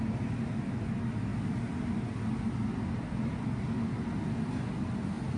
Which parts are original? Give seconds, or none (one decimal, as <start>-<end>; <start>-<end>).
0.0-5.4